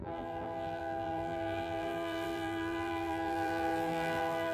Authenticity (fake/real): fake